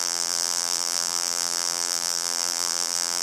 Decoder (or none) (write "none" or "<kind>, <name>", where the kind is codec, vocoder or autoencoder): vocoder, BigVGAN v2